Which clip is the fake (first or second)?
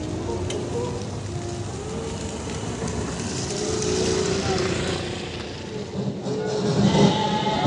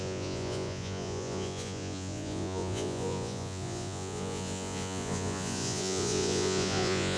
second